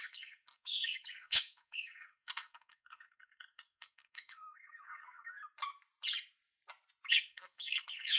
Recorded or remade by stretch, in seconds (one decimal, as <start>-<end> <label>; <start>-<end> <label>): 0.0-5.4 remade; 5.4-7.1 recorded; 7.1-8.2 remade